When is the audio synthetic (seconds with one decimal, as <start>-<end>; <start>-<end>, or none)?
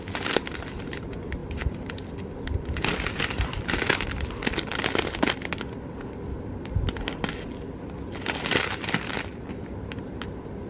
none